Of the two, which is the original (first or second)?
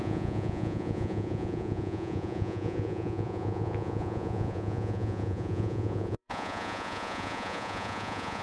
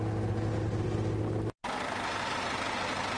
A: second